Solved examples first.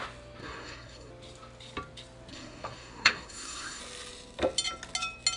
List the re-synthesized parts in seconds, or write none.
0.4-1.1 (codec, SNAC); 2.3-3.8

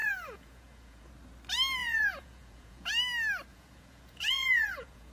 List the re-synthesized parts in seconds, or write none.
0.0-1.1 (vocoder, Vocos); 1.8-2.9; 3.5-5.1

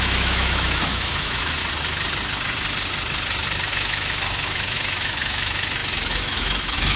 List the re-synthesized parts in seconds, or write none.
0.0-1.6 (autoencoder, DAC-VAE); 3.7-7.0

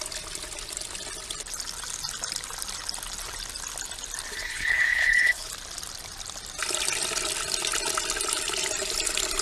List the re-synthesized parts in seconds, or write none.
4.3-5.5 (codec, HILCodec)

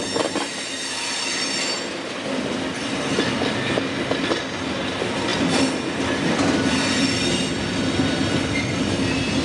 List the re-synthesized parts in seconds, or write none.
none

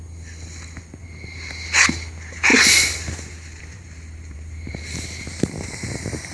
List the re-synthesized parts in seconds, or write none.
1.0-1.5 (vocoder, BigVGAN v2); 2.5-6.3